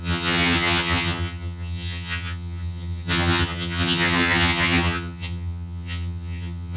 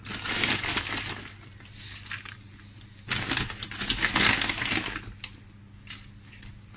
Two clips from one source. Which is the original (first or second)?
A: second